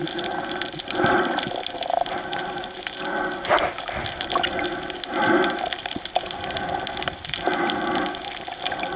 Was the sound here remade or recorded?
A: recorded